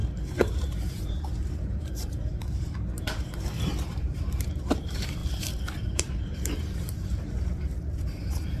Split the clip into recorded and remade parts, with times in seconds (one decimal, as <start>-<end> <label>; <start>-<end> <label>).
0.0-5.2 remade; 5.2-5.9 recorded; 5.9-8.6 remade